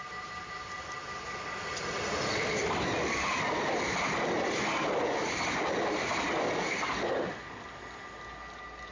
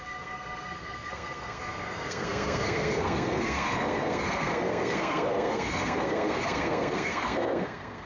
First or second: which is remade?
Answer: second